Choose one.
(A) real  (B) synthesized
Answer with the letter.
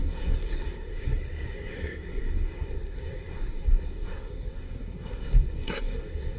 B